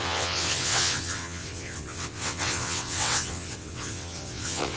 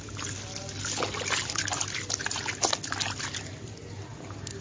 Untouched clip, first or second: second